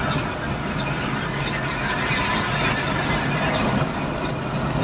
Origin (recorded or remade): recorded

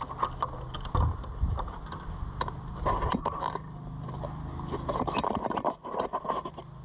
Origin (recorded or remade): recorded